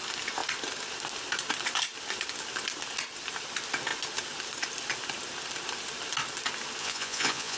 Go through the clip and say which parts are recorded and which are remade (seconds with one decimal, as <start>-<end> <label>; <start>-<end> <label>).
0.0-6.8 recorded; 6.8-7.6 remade